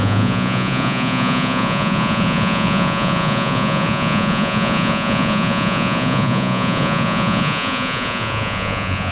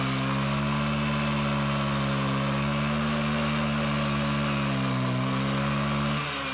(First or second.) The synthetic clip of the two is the first